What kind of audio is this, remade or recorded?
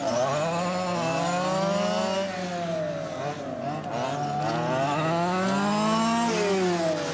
recorded